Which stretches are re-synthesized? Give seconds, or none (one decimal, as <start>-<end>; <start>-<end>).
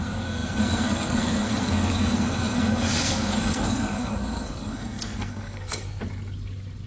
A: 0.0-6.0